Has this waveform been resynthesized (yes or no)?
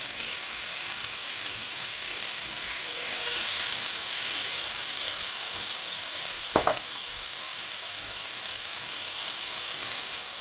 yes